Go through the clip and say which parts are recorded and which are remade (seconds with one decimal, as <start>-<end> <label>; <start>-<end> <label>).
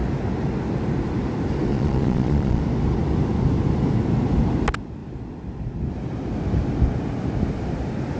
0.0-1.7 recorded; 1.7-2.6 remade; 2.6-8.2 recorded